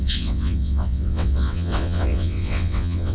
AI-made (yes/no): yes